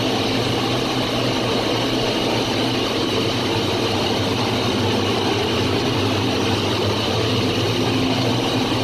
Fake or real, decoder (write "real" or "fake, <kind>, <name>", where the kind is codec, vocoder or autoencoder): real